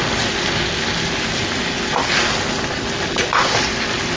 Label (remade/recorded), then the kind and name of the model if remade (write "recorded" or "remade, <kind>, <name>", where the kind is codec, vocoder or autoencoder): recorded